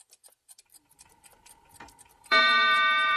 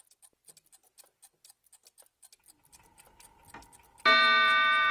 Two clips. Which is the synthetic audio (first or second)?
first